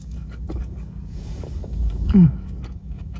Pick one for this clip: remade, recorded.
remade